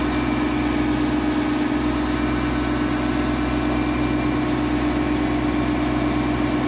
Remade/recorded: recorded